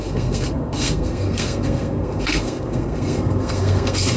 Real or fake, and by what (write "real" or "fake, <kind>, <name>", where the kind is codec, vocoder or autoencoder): fake, codec, SNAC